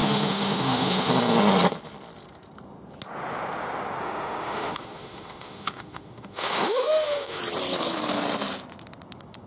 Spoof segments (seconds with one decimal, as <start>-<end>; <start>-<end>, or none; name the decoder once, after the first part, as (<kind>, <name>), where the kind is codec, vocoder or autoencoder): 0.0-1.1 (autoencoder, DAC-VAE); 4.0-7.4